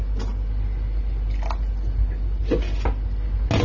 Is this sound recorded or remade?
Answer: recorded